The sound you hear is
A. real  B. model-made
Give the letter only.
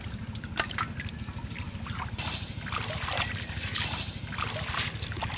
A